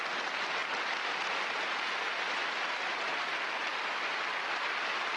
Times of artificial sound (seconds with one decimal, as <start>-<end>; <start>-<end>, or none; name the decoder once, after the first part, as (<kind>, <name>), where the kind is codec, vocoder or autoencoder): none